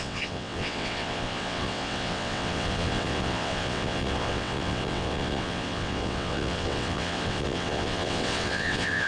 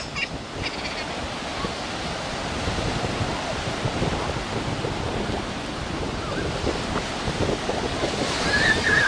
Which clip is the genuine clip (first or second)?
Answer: second